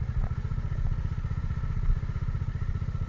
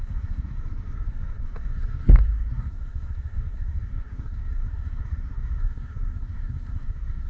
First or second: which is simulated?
second